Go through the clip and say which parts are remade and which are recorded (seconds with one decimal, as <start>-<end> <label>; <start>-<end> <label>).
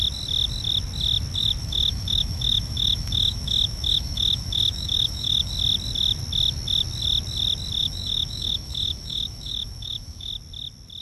0.0-1.6 recorded; 1.6-5.5 remade; 5.5-7.8 recorded; 7.8-10.3 remade; 10.3-11.0 recorded